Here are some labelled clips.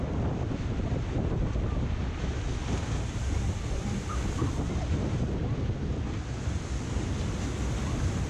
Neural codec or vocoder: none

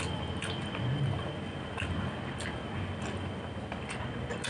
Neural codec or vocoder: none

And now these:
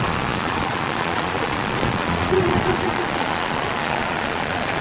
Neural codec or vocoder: vocoder, Vocos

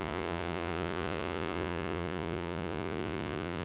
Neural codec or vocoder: vocoder, Vocos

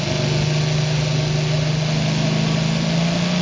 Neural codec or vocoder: none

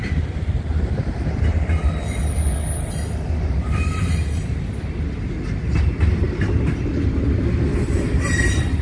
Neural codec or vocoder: none